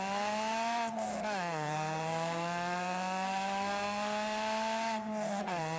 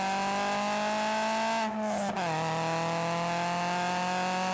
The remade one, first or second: first